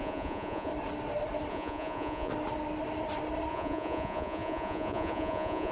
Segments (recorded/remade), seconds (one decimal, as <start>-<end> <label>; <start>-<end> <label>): 0.0-0.7 remade; 0.7-1.5 recorded; 1.5-2.3 remade; 2.3-3.5 recorded; 3.5-5.7 remade